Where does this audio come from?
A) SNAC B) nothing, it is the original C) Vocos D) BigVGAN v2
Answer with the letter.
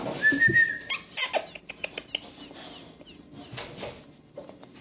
B